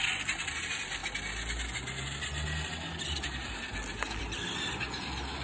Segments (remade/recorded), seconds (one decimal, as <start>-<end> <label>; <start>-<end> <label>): 0.0-5.4 recorded